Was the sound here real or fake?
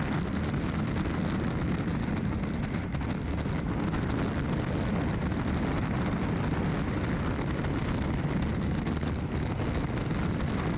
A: real